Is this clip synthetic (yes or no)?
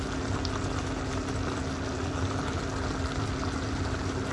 no